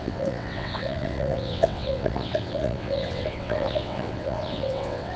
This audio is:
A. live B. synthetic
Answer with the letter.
B